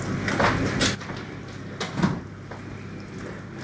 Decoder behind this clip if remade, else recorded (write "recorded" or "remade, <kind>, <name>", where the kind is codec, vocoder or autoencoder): recorded